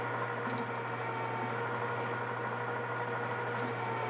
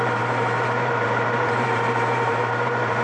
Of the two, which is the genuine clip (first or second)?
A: first